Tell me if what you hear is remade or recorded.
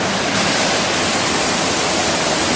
remade